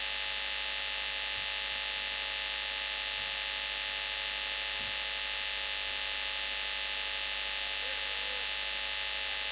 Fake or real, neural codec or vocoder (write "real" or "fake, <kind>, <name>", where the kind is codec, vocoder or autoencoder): real